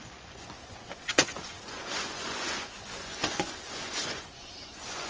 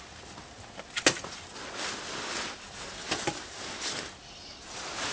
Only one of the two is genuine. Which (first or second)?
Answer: second